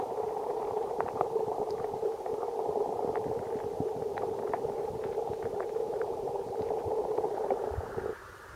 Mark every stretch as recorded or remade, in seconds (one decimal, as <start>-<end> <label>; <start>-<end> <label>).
0.0-2.3 remade; 2.3-5.1 recorded; 5.1-8.6 remade